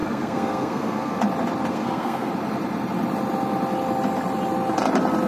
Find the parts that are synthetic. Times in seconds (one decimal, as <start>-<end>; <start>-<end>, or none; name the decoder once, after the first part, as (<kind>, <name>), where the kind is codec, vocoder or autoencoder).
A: 0.0-1.2 (codec, SNAC); 1.7-2.3